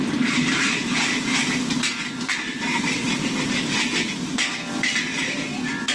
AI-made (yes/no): no